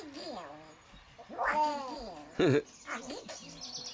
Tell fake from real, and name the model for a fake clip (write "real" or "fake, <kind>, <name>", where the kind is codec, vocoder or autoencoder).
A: real